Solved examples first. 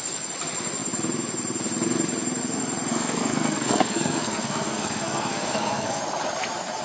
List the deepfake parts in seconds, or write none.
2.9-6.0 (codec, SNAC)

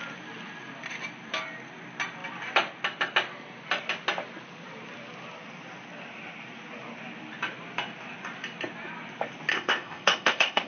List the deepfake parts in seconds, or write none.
9.5-10.7 (codec, ZipCodec)

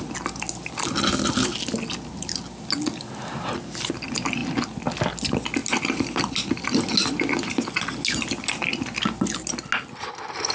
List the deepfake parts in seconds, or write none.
none

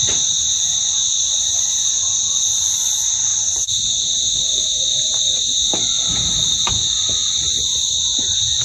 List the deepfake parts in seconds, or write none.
none